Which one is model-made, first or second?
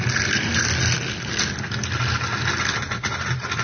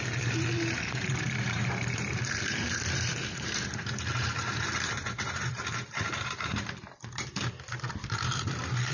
second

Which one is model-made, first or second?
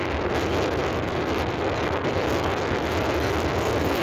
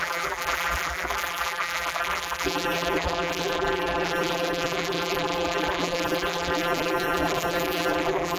second